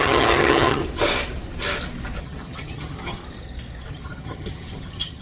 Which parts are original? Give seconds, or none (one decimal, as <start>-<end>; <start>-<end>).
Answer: 0.8-2.2; 3.2-3.9